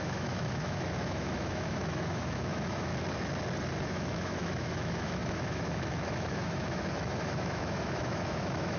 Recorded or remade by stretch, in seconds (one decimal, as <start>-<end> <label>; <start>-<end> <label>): 0.0-2.9 remade; 2.9-3.8 recorded; 3.8-8.8 remade